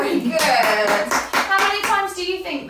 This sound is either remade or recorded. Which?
recorded